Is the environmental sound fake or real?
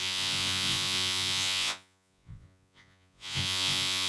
fake